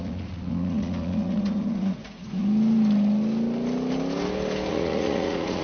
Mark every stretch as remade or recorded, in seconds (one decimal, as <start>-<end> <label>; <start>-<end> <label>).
0.0-2.4 remade; 2.4-4.7 recorded; 4.7-5.6 remade